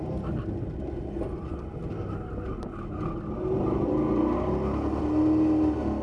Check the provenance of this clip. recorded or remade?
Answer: recorded